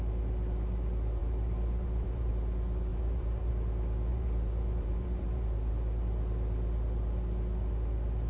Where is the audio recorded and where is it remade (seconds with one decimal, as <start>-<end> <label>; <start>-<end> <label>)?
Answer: 0.0-1.2 recorded; 1.2-2.3 remade; 2.3-2.9 recorded; 2.9-3.5 remade; 3.5-4.1 recorded; 4.1-5.7 remade; 5.7-8.3 recorded